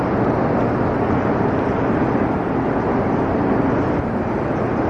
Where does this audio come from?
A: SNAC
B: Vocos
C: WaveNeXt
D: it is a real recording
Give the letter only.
D